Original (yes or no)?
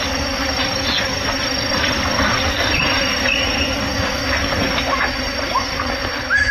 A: yes